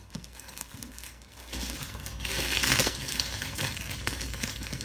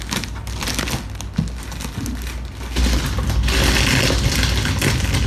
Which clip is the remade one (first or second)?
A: first